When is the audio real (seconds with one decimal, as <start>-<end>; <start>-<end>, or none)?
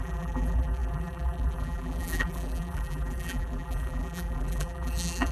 none